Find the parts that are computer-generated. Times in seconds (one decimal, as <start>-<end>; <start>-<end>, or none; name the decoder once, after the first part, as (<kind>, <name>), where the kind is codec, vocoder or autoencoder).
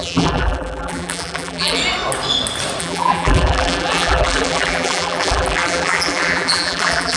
0.0-1.8 (vocoder, BigVGAN v2); 2.8-7.2